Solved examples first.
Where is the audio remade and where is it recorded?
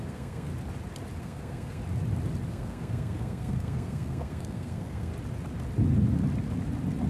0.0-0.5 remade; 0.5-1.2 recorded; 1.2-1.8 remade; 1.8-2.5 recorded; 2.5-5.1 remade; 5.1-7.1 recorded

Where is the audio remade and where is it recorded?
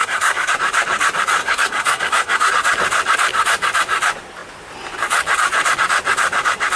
0.0-0.5 remade; 0.5-1.4 recorded; 1.4-2.5 remade; 2.5-6.8 recorded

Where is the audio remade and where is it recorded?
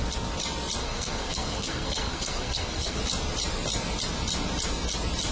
0.0-0.8 recorded; 0.8-3.0 remade; 3.0-5.3 recorded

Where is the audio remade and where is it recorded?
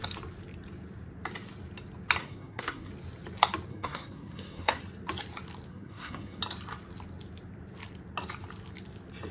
0.0-2.2 recorded; 2.2-2.9 remade; 2.9-3.7 recorded; 3.7-4.8 remade; 4.8-5.7 recorded; 5.7-6.4 remade; 6.4-9.3 recorded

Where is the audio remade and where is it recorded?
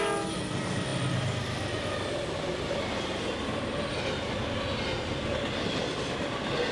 0.0-6.7 recorded